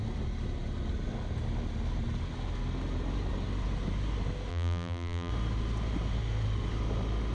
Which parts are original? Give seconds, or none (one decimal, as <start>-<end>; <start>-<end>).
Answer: 0.0-4.5; 5.3-7.3